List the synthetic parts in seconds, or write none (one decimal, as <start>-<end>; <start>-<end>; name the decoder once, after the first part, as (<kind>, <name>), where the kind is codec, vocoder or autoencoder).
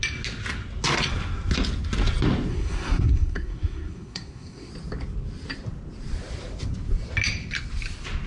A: 2.5-4.7 (codec, SNAC)